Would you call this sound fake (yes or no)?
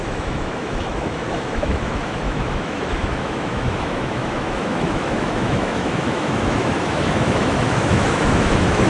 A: yes